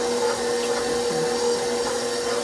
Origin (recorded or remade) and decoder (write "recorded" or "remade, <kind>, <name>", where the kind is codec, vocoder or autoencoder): recorded